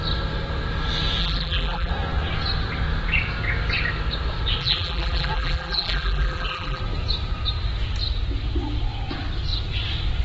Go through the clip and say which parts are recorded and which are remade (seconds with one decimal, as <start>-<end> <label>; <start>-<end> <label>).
0.0-1.2 recorded; 1.2-1.9 remade; 1.9-4.6 recorded; 4.6-6.8 remade; 6.8-10.2 recorded